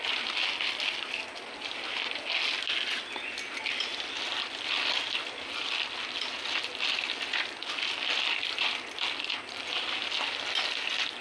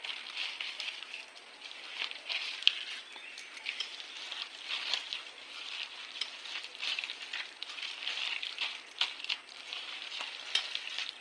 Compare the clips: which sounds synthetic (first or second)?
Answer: second